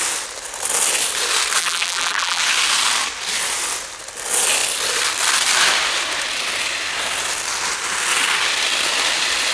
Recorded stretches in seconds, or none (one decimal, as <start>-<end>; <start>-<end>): 0.0-1.6; 2.4-9.5